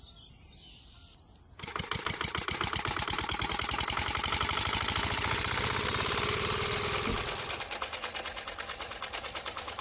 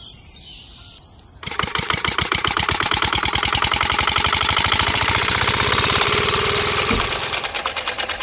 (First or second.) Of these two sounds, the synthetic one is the second